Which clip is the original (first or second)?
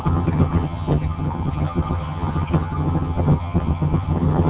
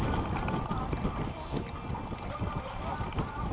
second